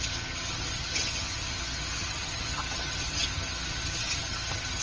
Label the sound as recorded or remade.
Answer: remade